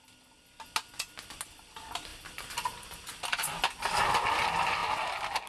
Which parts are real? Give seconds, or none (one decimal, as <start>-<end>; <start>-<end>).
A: 0.0-2.1; 3.1-5.5